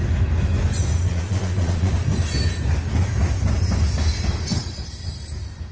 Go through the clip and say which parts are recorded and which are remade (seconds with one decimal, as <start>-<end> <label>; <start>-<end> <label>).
0.0-1.1 recorded; 1.1-1.9 remade; 1.9-5.7 recorded